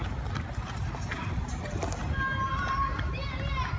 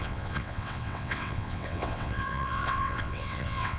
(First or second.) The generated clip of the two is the second